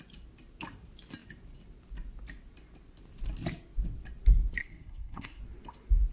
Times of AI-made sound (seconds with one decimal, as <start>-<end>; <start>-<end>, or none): 4.6-5.4